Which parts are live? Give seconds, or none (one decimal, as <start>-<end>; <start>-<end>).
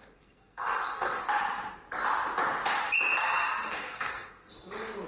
1.2-3.2; 4.5-5.1